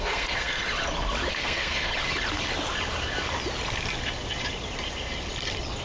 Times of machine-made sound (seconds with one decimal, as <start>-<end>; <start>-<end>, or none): 0.0-0.6; 1.3-1.9